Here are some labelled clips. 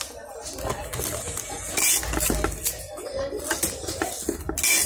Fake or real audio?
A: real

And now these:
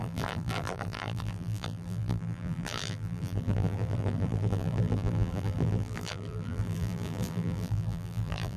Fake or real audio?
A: fake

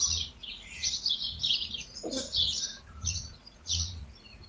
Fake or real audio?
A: fake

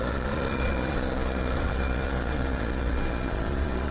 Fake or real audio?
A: fake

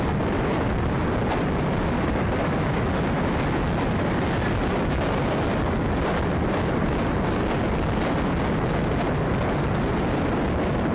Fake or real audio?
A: real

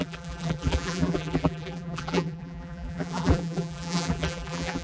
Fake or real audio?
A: fake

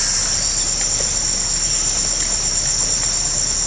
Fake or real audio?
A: real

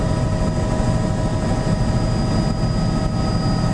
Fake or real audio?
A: real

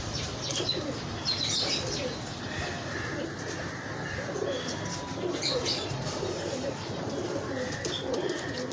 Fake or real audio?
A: real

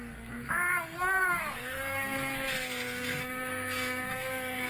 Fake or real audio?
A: fake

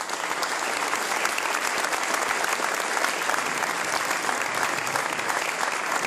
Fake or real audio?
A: real